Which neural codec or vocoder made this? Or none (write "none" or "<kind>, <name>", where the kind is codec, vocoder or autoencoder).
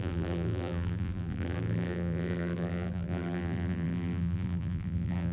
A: vocoder, BigVGAN v2